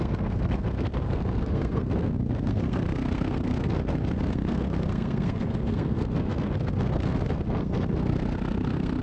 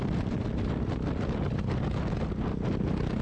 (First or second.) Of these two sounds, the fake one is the first